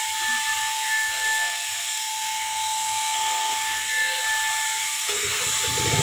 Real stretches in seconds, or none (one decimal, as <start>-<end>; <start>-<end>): 0.0-0.6; 4.2-4.8; 5.4-6.0